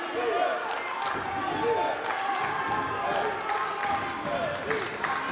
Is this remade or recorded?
recorded